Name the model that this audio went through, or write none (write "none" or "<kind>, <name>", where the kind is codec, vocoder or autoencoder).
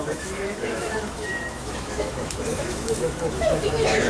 autoencoder, DAC-VAE